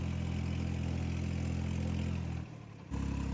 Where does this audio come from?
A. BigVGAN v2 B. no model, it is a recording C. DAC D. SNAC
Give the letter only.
B